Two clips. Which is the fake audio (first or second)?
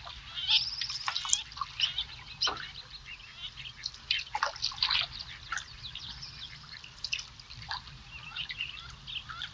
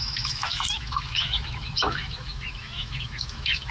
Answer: second